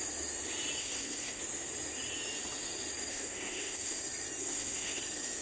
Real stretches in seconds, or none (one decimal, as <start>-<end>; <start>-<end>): 0.0-0.8; 1.4-3.1; 4.0-4.4; 5.0-5.4